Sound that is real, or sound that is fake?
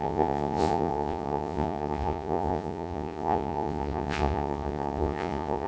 fake